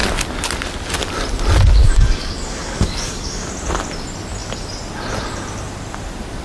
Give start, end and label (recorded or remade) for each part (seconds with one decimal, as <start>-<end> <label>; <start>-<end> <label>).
0.0-1.8 recorded; 1.8-3.5 remade; 3.5-6.4 recorded